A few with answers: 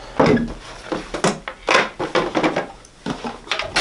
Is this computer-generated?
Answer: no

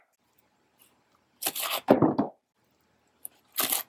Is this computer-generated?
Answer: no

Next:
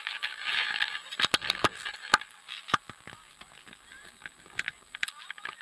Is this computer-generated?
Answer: yes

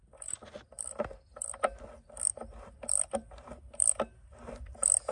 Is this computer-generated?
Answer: no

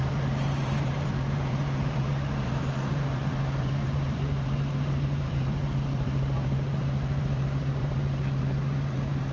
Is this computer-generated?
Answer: yes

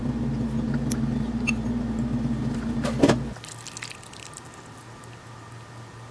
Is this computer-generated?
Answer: no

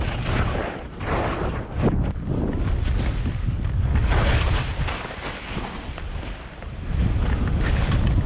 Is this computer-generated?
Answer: no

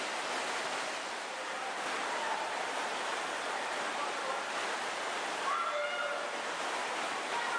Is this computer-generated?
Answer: no